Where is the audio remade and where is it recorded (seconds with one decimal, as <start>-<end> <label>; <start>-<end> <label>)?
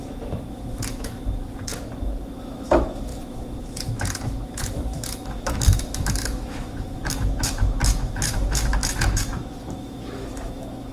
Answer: 0.0-10.9 remade